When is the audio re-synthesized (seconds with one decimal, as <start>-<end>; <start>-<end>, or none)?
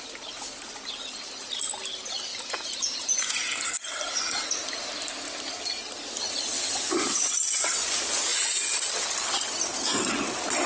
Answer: 2.3-3.6